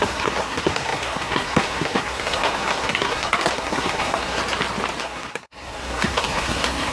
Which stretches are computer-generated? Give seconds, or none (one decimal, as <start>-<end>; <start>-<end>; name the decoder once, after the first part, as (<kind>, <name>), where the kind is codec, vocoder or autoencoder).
0.0-4.4 (codec, SNAC); 5.0-6.9

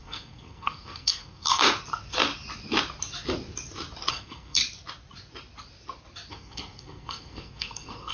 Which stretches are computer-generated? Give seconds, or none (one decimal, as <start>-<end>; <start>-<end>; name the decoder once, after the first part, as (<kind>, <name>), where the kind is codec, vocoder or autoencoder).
0.0-1.6 (codec, SNAC); 4.1-4.6; 6.3-8.1

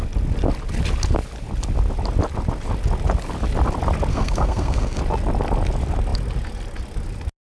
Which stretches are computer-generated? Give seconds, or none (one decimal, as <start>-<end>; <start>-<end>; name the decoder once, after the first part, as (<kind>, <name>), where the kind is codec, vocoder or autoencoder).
4.1-5.0 (codec, SNAC)

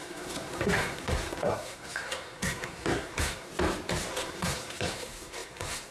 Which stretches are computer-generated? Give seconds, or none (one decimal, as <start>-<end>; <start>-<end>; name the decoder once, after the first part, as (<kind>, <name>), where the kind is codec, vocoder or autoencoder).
0.0-3.5 (codec, SNAC); 4.1-5.9

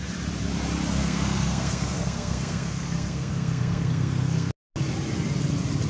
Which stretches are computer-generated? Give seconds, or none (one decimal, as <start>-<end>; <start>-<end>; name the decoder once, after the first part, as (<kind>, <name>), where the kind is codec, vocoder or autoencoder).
1.0-4.5 (codec, SNAC)

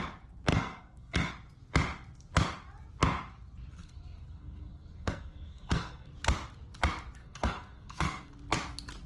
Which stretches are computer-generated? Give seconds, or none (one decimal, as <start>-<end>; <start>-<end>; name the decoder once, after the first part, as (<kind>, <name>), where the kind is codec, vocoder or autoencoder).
0.5-1.3 (codec, SNAC); 3.8-6.1; 7.2-8.3